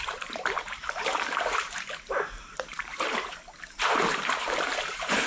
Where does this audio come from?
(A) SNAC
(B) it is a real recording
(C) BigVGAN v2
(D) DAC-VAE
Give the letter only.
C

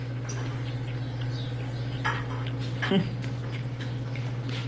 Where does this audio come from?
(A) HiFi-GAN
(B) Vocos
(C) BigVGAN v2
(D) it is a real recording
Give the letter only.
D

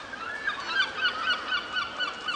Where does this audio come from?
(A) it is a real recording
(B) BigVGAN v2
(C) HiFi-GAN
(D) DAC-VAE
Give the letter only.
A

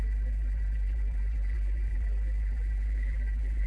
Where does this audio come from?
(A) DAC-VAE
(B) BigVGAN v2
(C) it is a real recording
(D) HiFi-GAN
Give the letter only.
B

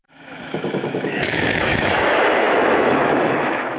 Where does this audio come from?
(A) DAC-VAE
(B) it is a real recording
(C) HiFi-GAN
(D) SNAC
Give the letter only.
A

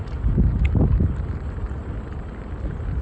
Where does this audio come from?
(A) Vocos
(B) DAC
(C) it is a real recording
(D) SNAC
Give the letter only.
C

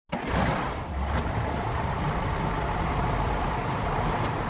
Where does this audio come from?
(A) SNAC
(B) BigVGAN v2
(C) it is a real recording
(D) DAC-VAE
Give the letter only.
C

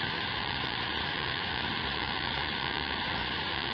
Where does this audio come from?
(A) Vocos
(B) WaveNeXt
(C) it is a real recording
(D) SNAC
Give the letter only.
A